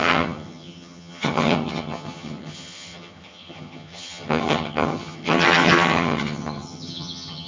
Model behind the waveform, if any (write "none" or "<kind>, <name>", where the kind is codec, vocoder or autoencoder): vocoder, HiFi-GAN